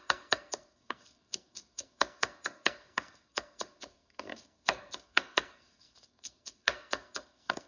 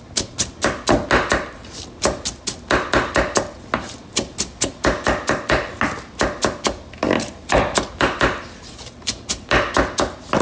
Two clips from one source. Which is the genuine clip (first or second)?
second